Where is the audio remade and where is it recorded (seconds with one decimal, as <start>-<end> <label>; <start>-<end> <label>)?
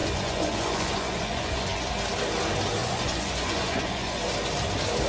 0.0-1.9 remade; 1.9-2.8 recorded; 2.8-4.2 remade; 4.2-5.1 recorded